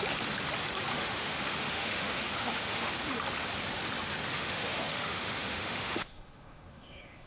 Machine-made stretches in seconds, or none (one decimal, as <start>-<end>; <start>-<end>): 0.9-2.9; 4.3-7.3